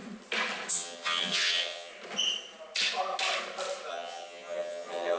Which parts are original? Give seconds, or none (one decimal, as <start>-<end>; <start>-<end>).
0.0-0.7; 1.9-3.9